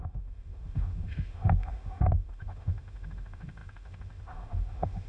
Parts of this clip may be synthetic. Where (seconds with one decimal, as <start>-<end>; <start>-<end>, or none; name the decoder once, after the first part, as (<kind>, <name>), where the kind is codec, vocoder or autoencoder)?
0.0-5.1 (autoencoder, DAC-VAE)